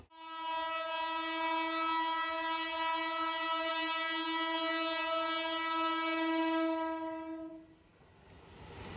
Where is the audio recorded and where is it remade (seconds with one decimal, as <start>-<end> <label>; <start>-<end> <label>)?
0.0-9.0 recorded